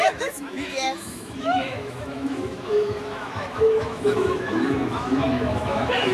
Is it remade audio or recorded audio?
remade